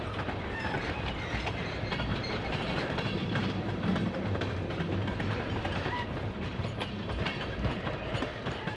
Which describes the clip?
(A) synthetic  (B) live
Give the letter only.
A